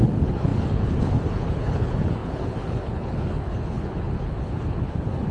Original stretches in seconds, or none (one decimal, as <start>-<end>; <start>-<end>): none